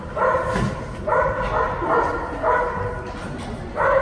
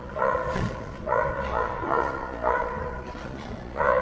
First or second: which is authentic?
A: first